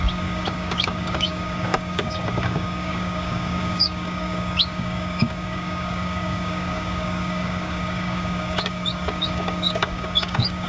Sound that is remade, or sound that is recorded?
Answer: remade